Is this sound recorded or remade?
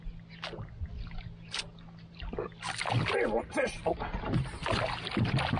recorded